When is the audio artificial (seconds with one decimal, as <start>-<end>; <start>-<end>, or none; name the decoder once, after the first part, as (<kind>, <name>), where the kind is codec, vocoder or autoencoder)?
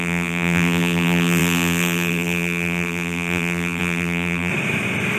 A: 0.0-4.5 (vocoder, BigVGAN v2)